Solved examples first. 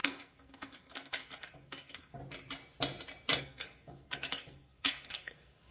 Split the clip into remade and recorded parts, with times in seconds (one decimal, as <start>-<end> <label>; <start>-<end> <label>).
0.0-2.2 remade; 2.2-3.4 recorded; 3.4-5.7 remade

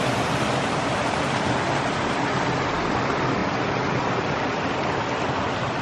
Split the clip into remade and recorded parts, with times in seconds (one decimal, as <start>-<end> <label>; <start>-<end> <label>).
0.0-5.8 recorded

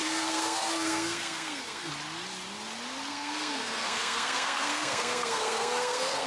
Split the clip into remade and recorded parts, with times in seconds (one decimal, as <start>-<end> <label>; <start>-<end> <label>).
0.0-1.9 remade; 1.9-3.1 recorded; 3.1-6.3 remade